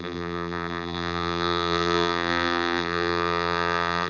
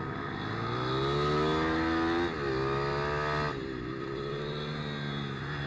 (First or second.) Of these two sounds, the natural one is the second